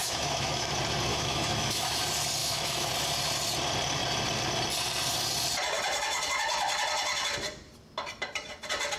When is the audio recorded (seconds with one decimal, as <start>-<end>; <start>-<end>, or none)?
0.7-1.1; 2.0-2.4; 2.9-9.0